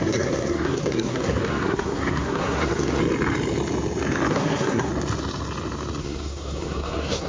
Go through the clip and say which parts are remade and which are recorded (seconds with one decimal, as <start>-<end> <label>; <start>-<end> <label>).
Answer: 0.0-3.0 remade; 3.0-4.3 recorded; 4.3-4.9 remade; 4.9-6.0 recorded; 6.0-7.3 remade